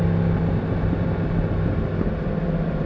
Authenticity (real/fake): real